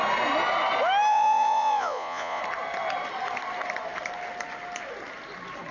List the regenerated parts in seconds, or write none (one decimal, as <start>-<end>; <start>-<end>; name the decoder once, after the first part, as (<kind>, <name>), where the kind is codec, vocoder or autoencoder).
1.1-2.4 (vocoder, Vocos)